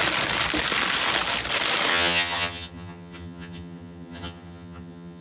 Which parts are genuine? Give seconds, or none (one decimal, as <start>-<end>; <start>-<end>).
0.0-1.9